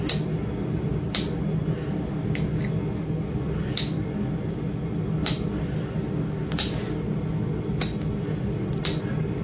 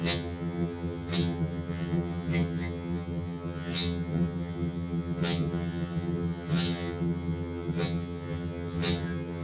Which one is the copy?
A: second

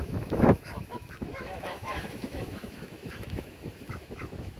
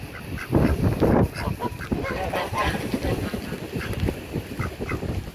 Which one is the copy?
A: first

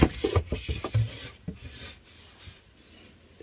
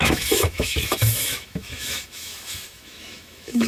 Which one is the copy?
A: second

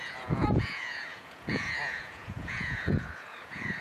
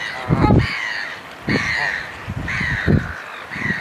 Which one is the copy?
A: first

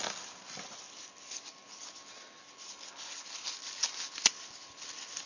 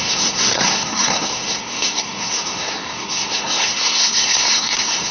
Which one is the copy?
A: second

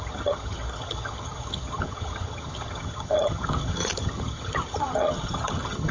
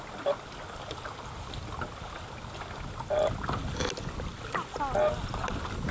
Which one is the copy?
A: first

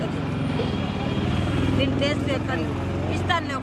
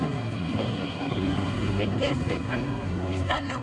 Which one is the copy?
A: second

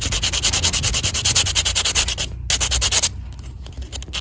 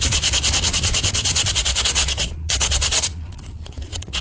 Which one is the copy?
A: second